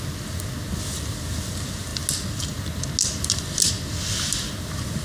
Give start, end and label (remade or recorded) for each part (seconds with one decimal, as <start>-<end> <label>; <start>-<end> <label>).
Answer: 0.0-5.0 recorded

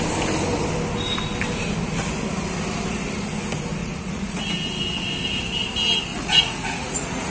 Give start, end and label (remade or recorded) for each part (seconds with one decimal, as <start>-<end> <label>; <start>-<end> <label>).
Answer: 0.0-3.8 recorded; 3.8-4.4 remade; 4.4-6.1 recorded; 6.1-7.3 remade

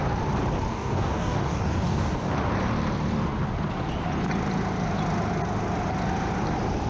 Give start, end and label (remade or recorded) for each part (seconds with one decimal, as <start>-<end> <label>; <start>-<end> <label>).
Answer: 0.0-0.7 recorded; 0.7-2.3 remade; 2.3-6.9 recorded

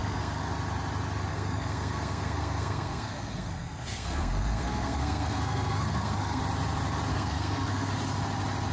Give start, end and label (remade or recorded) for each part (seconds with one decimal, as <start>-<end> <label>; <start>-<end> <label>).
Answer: 0.0-0.5 remade; 0.5-1.3 recorded; 1.3-6.4 remade; 6.4-7.1 recorded; 7.1-7.9 remade; 7.9-8.7 recorded

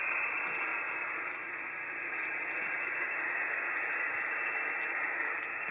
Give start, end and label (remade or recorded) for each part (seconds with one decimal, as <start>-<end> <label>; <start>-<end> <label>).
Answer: 0.0-0.7 remade; 0.7-1.4 recorded; 1.4-2.2 remade; 2.2-5.7 recorded

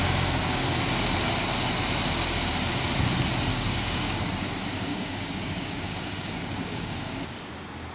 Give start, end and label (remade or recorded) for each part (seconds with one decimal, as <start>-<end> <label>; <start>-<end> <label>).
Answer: 0.0-3.5 recorded; 3.5-4.2 remade; 4.2-4.9 recorded; 4.9-7.2 remade; 7.2-7.9 recorded